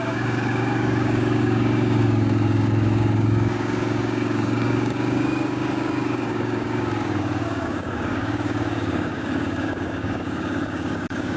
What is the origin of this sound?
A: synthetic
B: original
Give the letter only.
A